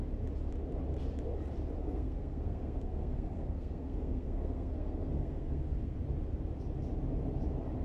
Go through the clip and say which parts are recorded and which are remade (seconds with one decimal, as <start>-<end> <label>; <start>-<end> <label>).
0.0-1.8 recorded; 1.8-6.0 remade; 6.0-7.8 recorded